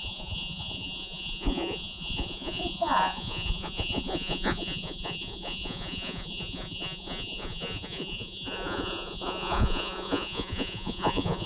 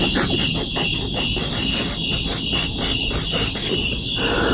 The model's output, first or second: first